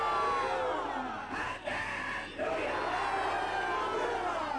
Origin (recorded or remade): recorded